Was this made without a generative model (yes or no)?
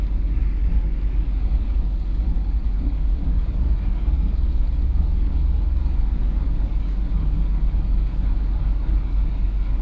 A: no